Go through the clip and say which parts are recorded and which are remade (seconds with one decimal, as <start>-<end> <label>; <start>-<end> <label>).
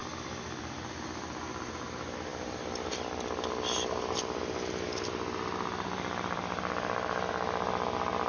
0.0-1.6 remade; 1.6-2.3 recorded; 2.3-7.3 remade; 7.3-8.3 recorded